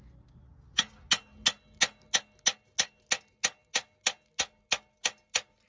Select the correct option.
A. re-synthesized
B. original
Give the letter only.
B